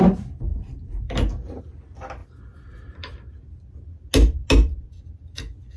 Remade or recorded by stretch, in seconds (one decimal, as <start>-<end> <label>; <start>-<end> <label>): 0.0-0.5 recorded; 0.5-1.6 remade; 1.6-5.8 recorded